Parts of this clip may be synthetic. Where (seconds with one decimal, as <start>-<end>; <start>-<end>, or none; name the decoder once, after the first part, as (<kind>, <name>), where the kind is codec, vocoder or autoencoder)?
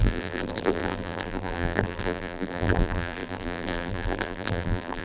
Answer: 0.0-5.0 (vocoder, BigVGAN v2)